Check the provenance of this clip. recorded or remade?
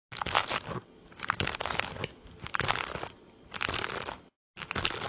recorded